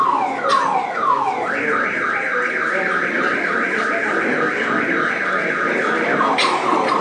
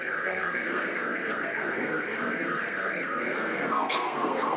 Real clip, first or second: first